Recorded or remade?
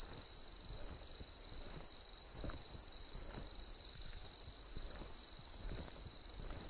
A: recorded